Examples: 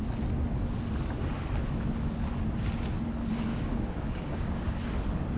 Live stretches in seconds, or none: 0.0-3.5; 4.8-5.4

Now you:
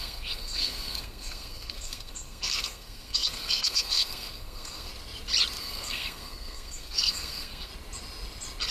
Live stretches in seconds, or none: 4.9-5.6; 7.7-8.7

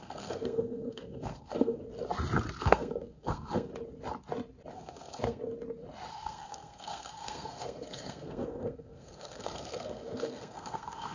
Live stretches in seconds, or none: 1.8-2.6; 3.7-4.7; 5.4-6.1

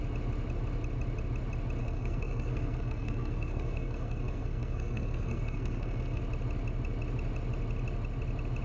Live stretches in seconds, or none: 0.0-1.8; 6.2-8.6

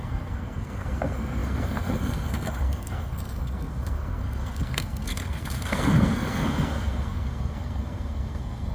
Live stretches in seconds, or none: none